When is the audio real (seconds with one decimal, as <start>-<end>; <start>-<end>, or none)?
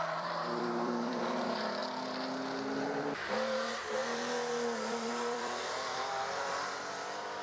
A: 1.8-2.8